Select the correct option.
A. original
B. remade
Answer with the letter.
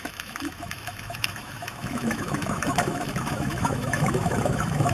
B